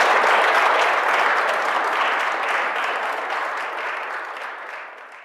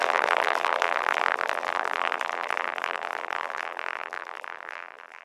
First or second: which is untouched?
first